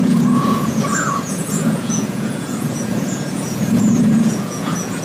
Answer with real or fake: fake